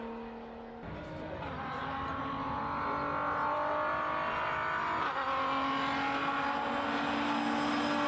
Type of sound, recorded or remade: recorded